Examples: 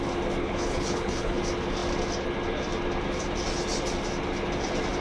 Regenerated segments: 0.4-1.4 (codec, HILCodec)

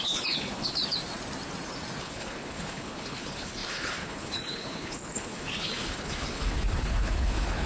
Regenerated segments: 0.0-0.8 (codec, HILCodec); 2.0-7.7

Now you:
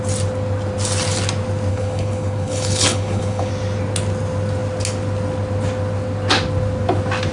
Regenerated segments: 1.7-3.5 (codec, HILCodec)

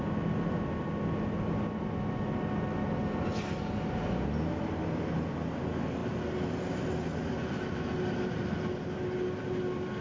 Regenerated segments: none

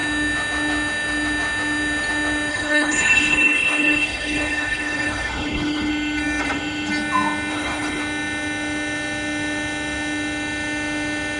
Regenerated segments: 2.5-5.9 (codec, HILCodec); 7.5-8.0

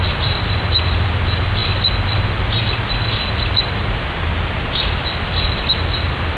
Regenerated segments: none

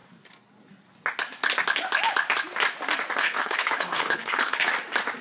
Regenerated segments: 3.2-4.7 (codec, HILCodec)